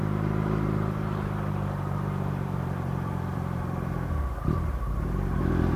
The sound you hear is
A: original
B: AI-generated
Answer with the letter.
B